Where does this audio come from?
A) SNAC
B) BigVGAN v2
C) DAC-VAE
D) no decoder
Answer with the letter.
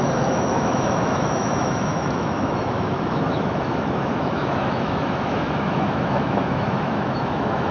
C